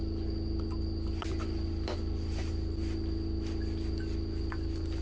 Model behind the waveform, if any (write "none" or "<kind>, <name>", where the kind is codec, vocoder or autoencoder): none